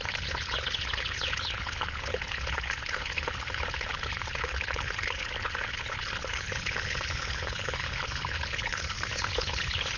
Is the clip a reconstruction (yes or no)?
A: yes